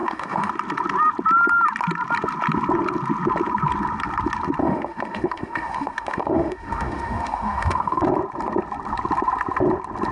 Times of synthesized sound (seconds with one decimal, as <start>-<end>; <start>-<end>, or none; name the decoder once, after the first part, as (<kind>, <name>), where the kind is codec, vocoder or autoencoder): 0.0-0.5 (autoencoder, DAC-VAE); 4.6-8.0